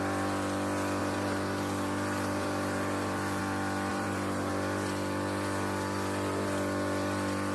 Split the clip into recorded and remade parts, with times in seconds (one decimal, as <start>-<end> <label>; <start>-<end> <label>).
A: 0.0-1.0 recorded; 1.0-3.4 remade; 3.4-3.9 recorded; 3.9-4.5 remade; 4.5-7.5 recorded